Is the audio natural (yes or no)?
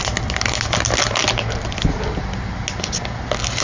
yes